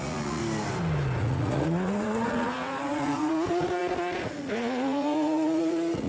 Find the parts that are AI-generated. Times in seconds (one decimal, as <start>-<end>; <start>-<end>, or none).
0.0-0.4; 1.2-6.1